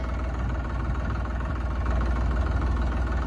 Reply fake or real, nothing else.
real